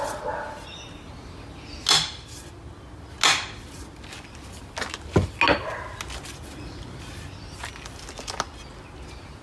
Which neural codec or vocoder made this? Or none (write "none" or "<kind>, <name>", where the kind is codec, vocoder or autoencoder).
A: none